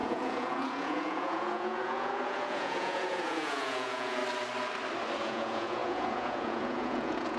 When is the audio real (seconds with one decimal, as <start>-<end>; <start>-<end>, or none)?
4.2-5.2